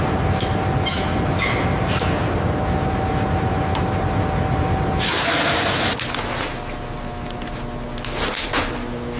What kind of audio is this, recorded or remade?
recorded